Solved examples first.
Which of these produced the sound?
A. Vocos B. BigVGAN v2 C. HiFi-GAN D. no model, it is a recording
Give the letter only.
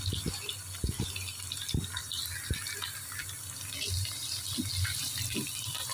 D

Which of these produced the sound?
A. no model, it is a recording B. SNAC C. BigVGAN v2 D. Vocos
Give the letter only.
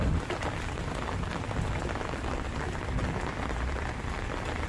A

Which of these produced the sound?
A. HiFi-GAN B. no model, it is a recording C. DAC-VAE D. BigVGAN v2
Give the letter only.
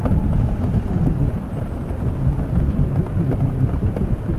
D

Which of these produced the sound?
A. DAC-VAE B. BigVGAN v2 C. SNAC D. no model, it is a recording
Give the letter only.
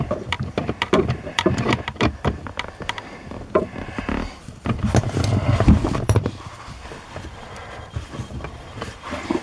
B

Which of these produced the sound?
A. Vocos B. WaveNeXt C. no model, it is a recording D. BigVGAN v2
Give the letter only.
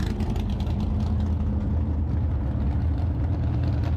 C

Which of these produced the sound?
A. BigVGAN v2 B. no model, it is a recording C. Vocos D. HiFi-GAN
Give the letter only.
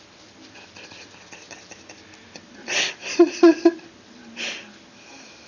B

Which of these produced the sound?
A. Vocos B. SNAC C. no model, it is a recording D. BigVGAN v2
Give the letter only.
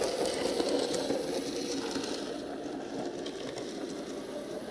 C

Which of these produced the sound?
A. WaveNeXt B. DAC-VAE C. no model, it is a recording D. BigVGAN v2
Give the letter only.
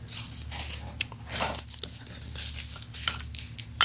C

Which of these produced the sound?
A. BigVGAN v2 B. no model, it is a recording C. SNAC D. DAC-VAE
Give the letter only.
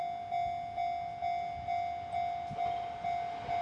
B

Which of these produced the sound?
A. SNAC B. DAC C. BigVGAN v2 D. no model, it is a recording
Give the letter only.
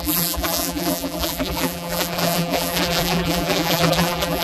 C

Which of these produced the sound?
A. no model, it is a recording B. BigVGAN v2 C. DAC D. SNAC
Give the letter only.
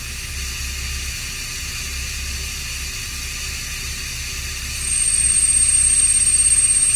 A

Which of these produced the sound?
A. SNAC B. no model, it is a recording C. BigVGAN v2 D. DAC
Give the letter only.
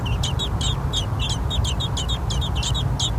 B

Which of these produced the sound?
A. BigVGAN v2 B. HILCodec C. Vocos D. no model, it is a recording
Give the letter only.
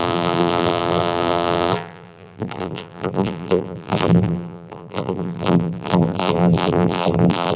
A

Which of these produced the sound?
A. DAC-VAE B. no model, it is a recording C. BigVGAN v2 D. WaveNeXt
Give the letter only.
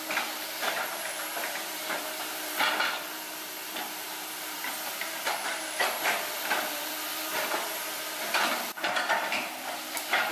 C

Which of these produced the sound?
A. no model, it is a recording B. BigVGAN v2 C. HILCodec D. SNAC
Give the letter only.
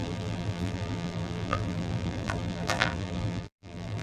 B